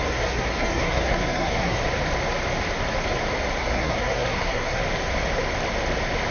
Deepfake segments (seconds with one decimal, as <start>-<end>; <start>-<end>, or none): 0.0-1.8; 3.6-4.8